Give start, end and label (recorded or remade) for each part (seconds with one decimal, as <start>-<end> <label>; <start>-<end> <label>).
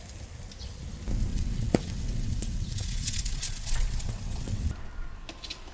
0.0-1.3 recorded; 1.3-4.7 remade; 4.7-5.7 recorded